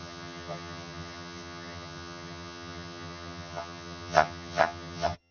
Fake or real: fake